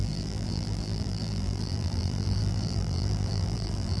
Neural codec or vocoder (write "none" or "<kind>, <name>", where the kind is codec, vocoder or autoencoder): vocoder, BigVGAN v2